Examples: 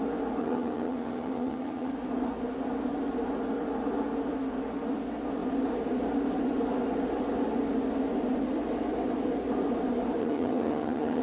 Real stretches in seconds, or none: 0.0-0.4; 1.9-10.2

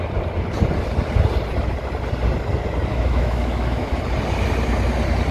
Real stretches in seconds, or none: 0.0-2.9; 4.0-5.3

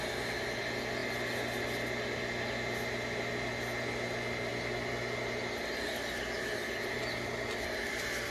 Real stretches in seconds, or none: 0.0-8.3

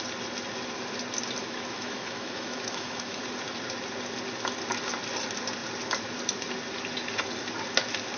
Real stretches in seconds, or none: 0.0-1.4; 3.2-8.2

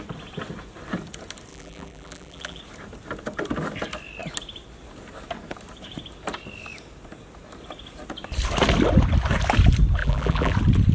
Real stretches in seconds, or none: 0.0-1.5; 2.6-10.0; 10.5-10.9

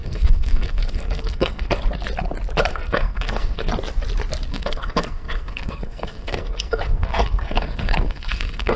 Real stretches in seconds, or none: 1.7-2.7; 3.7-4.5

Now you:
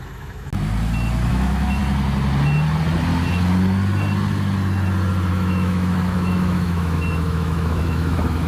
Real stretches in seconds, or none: 0.5-1.3; 1.8-5.3

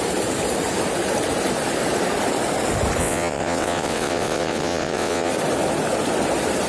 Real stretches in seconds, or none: 0.0-3.0; 5.3-6.7